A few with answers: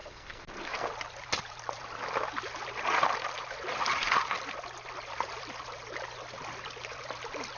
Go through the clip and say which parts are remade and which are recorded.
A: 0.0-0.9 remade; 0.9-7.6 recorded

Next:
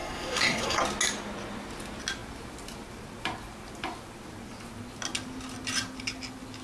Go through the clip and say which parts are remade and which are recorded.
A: 0.0-0.8 remade; 0.8-6.6 recorded

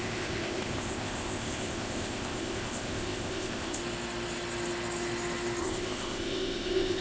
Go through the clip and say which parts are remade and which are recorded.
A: 0.0-3.8 remade; 3.8-5.6 recorded; 5.6-7.0 remade